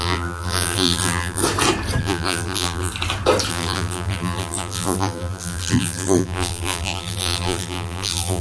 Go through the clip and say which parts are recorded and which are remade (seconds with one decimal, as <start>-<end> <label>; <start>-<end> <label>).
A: 0.0-1.4 remade; 1.4-2.0 recorded; 2.0-2.9 remade; 2.9-3.5 recorded; 3.5-8.4 remade